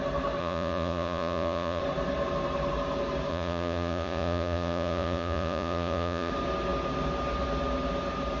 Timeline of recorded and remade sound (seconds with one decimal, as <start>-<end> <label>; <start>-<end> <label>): 0.0-0.4 recorded; 0.4-1.8 remade; 1.8-3.3 recorded; 3.3-6.3 remade; 6.3-8.4 recorded